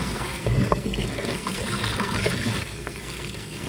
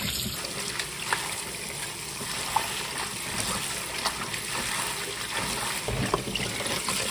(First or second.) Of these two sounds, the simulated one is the first